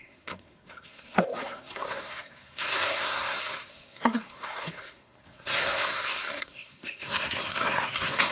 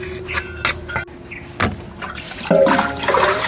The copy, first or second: first